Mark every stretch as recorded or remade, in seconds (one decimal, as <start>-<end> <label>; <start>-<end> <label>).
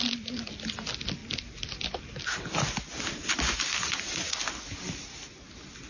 0.0-3.9 recorded; 3.9-4.4 remade; 4.4-5.9 recorded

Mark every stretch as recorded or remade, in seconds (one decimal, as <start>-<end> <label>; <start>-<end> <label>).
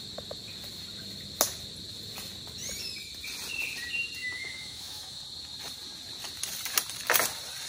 0.0-4.2 recorded; 4.2-5.2 remade; 5.2-7.7 recorded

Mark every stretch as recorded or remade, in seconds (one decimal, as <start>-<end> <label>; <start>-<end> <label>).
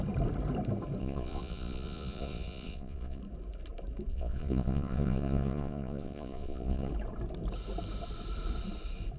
0.0-1.0 recorded; 1.0-3.2 remade; 3.2-4.1 recorded; 4.1-6.9 remade; 6.9-9.2 recorded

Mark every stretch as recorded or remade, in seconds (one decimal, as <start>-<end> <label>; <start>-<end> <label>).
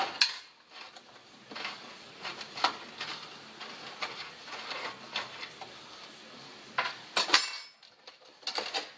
0.0-9.0 recorded